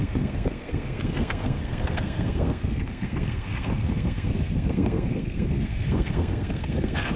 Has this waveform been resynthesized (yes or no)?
yes